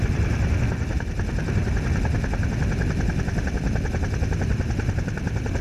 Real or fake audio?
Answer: real